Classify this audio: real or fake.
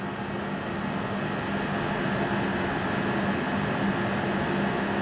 real